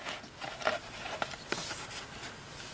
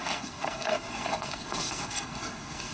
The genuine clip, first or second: first